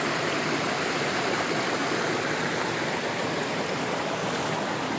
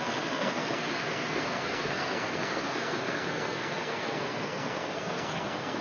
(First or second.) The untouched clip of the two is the first